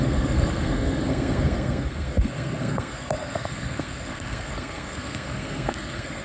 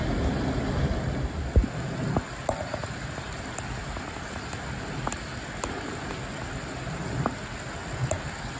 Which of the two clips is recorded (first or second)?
second